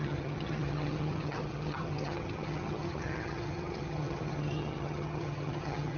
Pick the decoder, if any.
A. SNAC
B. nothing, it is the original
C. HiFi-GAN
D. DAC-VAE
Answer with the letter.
C